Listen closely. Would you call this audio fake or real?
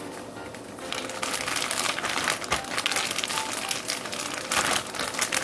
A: real